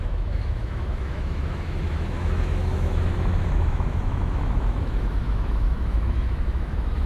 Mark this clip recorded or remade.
remade